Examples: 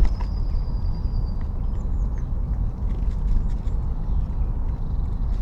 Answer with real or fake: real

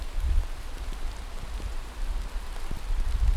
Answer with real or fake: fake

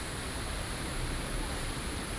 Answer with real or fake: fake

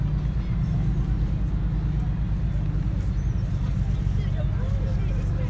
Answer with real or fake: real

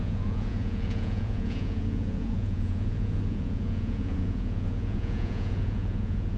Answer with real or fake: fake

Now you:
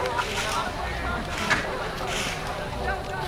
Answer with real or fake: real